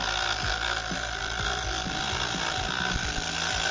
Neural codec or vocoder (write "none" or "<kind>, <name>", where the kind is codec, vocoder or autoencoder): none